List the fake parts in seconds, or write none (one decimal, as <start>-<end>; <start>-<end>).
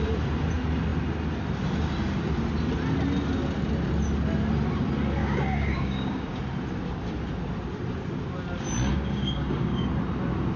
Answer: 5.2-6.4; 8.9-10.0